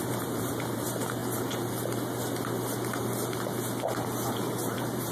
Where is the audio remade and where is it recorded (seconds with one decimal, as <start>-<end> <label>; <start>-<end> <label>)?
0.0-1.2 remade; 1.2-4.3 recorded; 4.3-5.1 remade